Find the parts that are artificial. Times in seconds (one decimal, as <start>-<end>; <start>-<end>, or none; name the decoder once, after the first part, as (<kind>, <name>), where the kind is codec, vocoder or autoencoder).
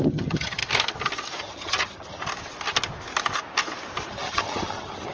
0.0-0.6 (vocoder, HiFi-GAN); 1.4-2.2; 4.1-5.1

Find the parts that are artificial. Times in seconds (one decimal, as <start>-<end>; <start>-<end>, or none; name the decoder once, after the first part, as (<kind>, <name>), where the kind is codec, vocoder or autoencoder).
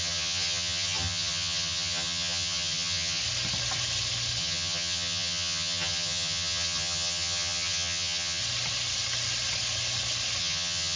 0.0-3.2 (vocoder, HiFi-GAN); 4.4-8.4; 10.4-11.0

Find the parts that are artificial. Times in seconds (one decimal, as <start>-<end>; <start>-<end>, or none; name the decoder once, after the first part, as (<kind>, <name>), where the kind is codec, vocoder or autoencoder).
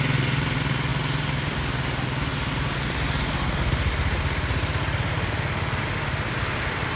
none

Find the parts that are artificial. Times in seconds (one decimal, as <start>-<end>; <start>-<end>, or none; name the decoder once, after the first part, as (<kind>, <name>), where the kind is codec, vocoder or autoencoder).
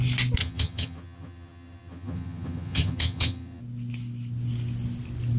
0.4-3.6 (vocoder, HiFi-GAN)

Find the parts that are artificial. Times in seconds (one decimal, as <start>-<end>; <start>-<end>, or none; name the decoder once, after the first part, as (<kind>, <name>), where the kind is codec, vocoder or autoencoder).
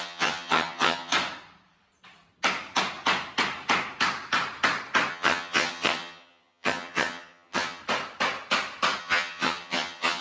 0.0-1.1 (vocoder, HiFi-GAN); 5.1-7.8; 9.0-10.2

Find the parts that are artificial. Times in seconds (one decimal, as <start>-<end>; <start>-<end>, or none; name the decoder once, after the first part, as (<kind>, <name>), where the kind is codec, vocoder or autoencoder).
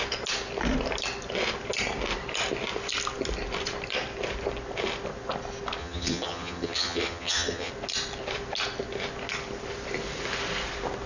5.8-7.7 (vocoder, HiFi-GAN)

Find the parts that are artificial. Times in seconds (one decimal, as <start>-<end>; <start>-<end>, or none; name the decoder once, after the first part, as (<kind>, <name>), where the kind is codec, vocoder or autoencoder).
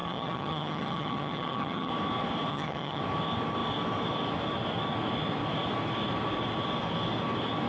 0.0-1.9 (vocoder, HiFi-GAN); 2.5-3.0